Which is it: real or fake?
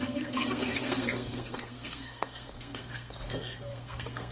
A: fake